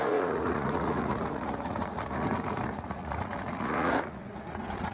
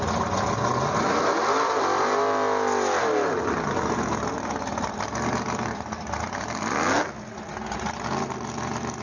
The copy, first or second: first